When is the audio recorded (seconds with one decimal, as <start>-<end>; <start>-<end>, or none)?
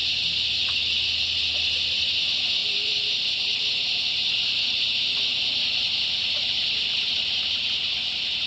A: 0.0-2.6; 7.5-8.5